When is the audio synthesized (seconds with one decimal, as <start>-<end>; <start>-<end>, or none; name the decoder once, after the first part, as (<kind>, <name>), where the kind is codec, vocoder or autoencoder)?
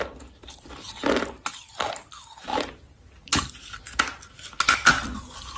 2.5-3.5 (vocoder, BigVGAN v2)